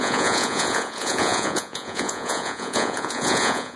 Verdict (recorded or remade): remade